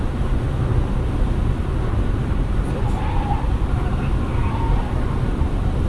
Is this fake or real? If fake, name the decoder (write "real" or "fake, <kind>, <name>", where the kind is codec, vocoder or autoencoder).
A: real